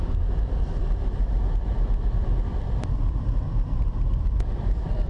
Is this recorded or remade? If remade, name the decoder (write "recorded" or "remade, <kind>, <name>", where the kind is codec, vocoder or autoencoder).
remade, vocoder, BigVGAN v2